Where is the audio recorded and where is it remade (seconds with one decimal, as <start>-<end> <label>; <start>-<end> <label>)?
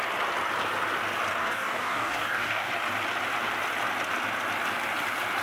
0.0-1.4 recorded; 1.4-2.7 remade; 2.7-5.4 recorded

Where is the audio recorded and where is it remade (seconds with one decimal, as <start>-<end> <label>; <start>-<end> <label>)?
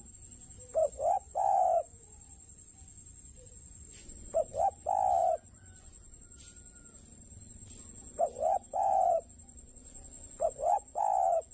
0.0-0.8 recorded; 0.8-4.6 remade; 4.6-5.2 recorded; 5.2-6.4 remade; 6.4-7.6 recorded; 7.6-11.0 remade; 11.0-11.5 recorded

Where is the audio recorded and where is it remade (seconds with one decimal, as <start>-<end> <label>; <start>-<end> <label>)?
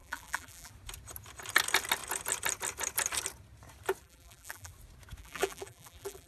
0.0-0.7 remade; 0.7-4.0 recorded; 4.0-4.7 remade; 4.7-5.2 recorded; 5.2-6.3 remade